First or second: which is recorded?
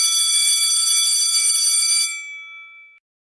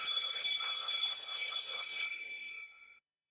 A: first